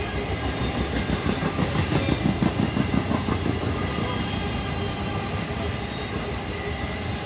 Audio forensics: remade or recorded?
recorded